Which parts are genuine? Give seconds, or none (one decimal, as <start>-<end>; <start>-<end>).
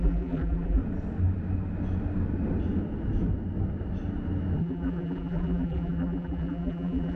0.8-4.6